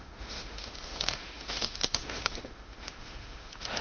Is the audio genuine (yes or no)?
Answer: no